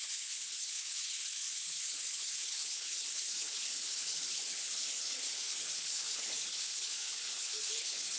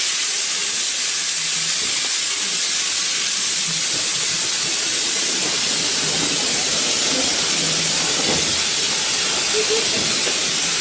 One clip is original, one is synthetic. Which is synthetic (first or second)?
first